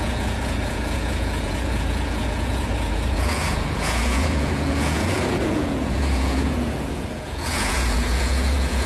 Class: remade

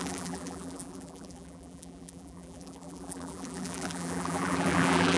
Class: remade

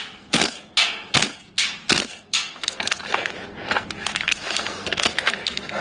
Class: remade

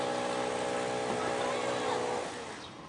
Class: recorded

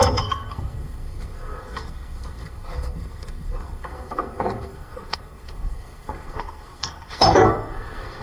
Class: remade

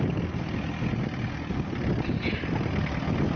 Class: recorded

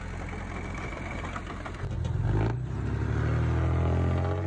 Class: recorded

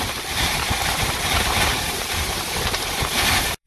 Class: remade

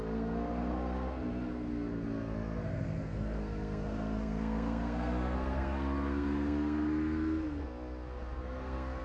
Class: remade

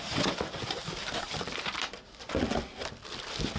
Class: recorded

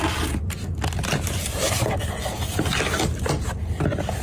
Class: recorded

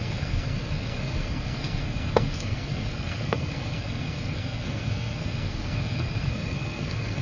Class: remade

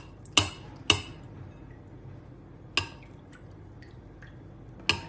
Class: recorded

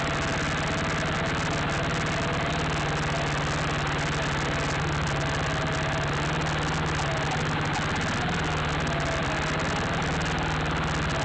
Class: recorded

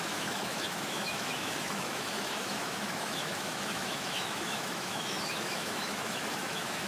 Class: remade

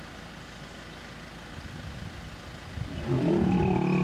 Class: recorded